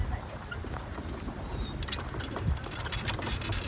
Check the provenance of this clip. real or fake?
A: real